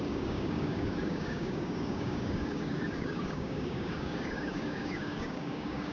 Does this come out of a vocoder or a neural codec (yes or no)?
yes